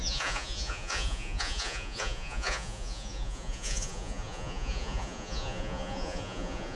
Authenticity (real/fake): fake